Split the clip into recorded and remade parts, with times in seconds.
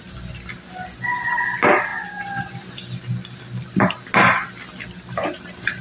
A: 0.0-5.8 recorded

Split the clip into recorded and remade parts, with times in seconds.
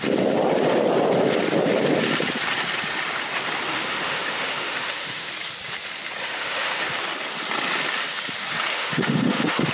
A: 0.0-3.7 recorded; 3.7-5.3 remade; 5.3-6.2 recorded; 6.2-6.8 remade; 6.8-8.7 recorded; 8.7-9.7 remade